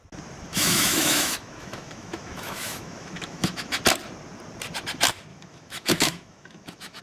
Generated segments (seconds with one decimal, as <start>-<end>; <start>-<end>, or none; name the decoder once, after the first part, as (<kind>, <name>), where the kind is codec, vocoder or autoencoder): 0.5-3.8 (autoencoder, DAC-VAE); 5.3-7.0